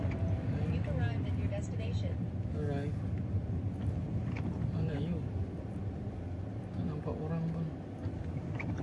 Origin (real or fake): real